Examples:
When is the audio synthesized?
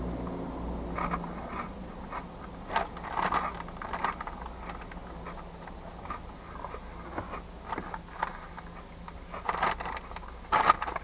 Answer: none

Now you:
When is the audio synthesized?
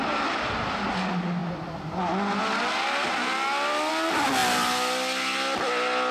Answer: none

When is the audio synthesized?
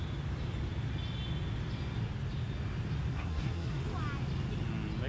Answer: 3.1-3.8 (codec, SNAC)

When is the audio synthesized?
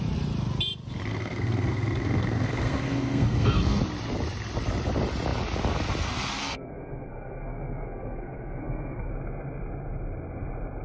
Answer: 1.1-3.8 (codec, SNAC); 6.4-9.1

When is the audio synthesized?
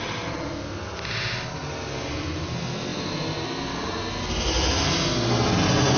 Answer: none